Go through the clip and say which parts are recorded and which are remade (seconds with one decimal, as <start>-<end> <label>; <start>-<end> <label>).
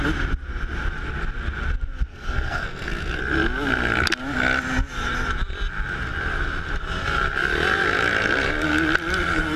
0.0-2.1 recorded; 2.1-3.2 remade; 3.2-9.6 recorded